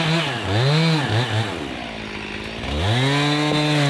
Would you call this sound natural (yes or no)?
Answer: yes